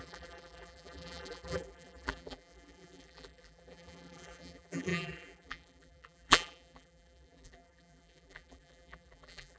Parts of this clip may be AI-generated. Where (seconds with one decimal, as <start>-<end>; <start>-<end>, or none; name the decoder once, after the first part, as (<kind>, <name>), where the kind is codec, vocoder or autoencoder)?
0.0-9.6 (vocoder, BigVGAN v2)